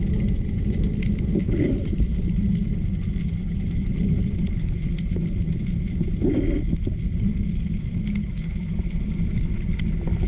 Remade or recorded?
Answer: recorded